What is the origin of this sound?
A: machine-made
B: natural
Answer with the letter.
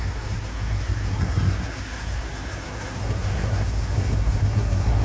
A